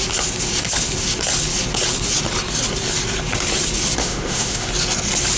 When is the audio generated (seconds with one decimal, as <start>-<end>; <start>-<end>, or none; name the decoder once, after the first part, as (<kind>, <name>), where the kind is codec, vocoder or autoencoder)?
4.0-4.7 (autoencoder, DAC-VAE)